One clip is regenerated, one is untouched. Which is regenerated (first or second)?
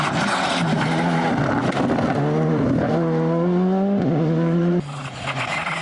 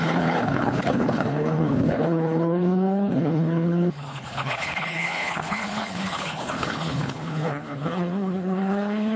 second